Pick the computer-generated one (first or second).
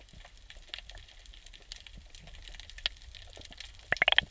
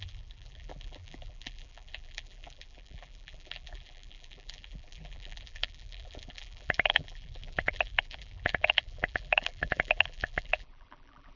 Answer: second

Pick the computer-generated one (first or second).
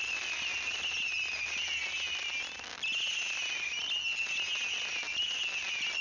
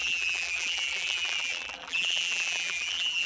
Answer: second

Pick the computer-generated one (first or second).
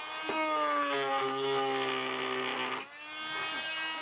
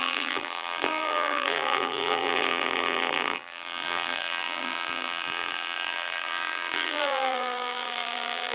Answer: second